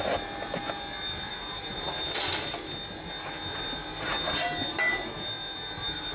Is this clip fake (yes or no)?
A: no